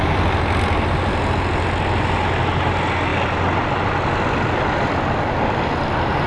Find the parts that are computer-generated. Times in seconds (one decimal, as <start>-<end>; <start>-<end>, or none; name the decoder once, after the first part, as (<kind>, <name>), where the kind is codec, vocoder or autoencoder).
none